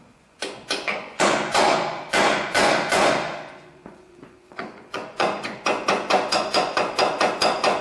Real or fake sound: fake